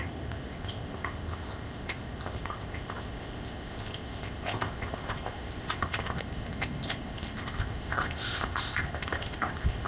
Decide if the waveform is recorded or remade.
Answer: remade